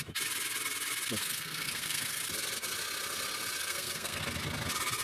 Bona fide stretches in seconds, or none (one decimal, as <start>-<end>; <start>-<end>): 0.0-1.2; 2.2-3.6; 4.2-5.0

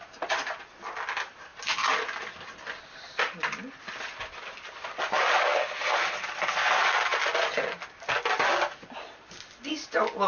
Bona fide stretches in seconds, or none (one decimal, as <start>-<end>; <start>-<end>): 0.0-10.3

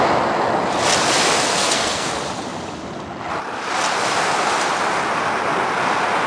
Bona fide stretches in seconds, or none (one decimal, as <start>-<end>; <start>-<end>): 0.0-1.6; 2.1-6.3